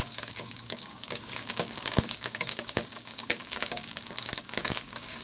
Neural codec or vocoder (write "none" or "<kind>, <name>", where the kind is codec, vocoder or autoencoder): codec, DAC